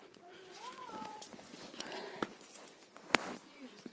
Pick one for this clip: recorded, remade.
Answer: remade